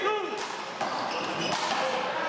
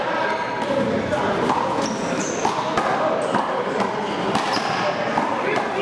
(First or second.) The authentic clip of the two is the first